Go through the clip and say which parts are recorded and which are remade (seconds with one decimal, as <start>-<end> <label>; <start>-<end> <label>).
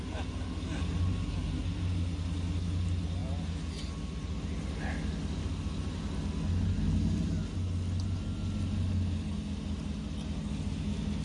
0.0-11.2 recorded